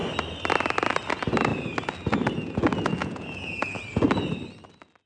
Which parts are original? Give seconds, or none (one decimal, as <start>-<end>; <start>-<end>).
0.0-3.0; 3.8-5.1